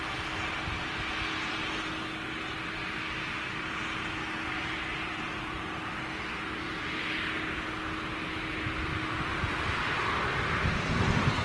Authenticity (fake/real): real